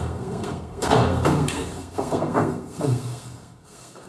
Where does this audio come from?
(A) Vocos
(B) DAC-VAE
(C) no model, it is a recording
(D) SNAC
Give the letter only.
D